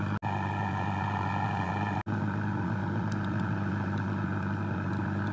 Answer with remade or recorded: recorded